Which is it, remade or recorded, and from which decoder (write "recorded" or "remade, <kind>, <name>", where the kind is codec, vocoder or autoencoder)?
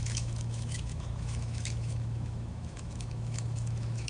remade, autoencoder, DAC-VAE